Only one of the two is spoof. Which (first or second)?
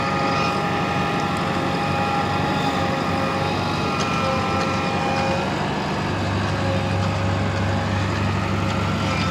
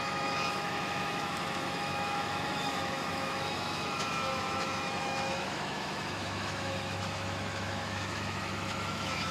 second